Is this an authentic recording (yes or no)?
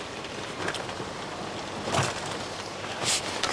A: no